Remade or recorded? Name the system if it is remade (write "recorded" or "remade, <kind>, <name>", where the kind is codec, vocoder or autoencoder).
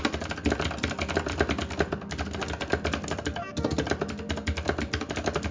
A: recorded